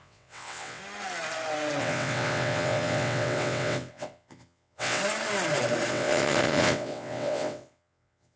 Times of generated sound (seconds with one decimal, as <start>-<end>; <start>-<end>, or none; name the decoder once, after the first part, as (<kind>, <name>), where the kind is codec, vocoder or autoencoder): 0.0-0.8 (vocoder, WaveNeXt); 1.8-5.0; 5.9-8.4